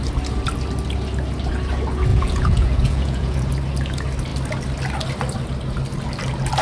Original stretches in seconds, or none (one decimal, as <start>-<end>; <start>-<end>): 0.0-2.1; 3.5-6.6